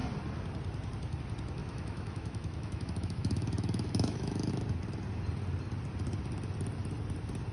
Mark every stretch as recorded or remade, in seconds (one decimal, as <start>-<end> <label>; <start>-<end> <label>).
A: 0.0-1.6 recorded; 1.6-4.5 remade; 4.5-7.5 recorded

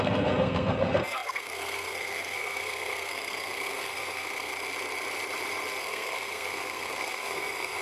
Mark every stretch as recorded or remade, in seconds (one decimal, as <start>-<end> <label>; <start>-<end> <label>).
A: 0.0-4.5 remade; 4.5-5.8 recorded; 5.8-7.8 remade

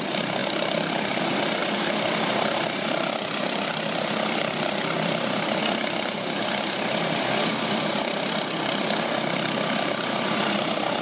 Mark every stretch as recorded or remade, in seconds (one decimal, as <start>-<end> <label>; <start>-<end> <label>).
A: 0.0-0.4 remade; 0.4-1.2 recorded; 1.2-11.0 remade

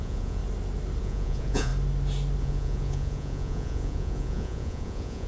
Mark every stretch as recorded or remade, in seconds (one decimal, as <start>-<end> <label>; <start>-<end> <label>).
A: 0.0-0.4 remade; 0.4-1.0 recorded; 1.0-1.7 remade; 1.7-2.4 recorded; 2.4-5.3 remade

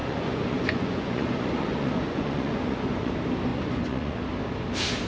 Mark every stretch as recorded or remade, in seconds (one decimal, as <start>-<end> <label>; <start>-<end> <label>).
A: 0.0-3.1 remade; 3.1-3.5 recorded; 3.5-4.2 remade; 4.2-5.1 recorded

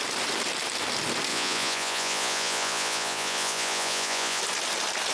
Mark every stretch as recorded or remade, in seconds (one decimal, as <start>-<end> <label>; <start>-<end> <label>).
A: 0.0-1.3 recorded; 1.3-4.4 remade; 4.4-5.1 recorded